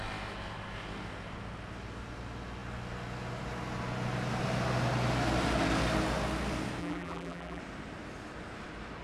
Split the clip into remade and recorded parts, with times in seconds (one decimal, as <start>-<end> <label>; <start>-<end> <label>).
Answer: 0.0-6.8 recorded; 6.8-7.6 remade; 7.6-9.0 recorded